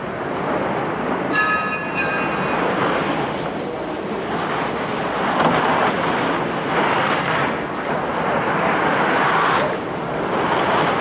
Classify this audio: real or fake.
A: real